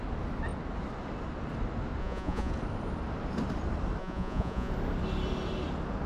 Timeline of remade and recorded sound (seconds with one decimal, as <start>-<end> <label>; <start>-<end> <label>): 0.0-2.0 recorded; 2.0-2.5 remade; 2.5-4.0 recorded; 4.0-4.7 remade; 4.7-6.1 recorded